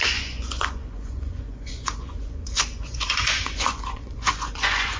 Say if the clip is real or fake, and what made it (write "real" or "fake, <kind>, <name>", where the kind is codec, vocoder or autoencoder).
fake, vocoder, Vocos